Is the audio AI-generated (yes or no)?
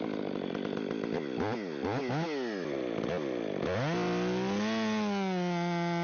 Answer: no